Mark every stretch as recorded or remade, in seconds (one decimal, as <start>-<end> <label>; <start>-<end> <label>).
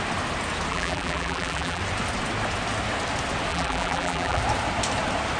0.0-0.7 recorded; 0.7-1.8 remade; 1.8-3.5 recorded; 3.5-4.4 remade; 4.4-5.4 recorded